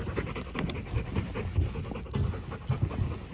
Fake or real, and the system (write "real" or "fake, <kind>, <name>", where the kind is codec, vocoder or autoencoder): real